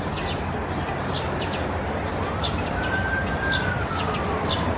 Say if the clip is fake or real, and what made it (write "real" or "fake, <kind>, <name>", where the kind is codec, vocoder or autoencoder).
fake, vocoder, BigVGAN v2